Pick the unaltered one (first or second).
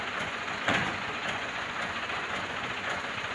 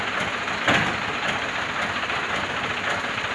second